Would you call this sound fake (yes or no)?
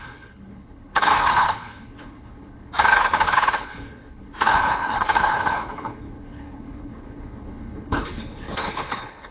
yes